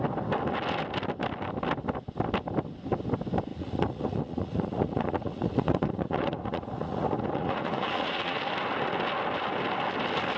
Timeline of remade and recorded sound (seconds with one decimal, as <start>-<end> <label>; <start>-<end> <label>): 0.0-3.5 recorded; 3.5-8.4 remade; 8.4-10.4 recorded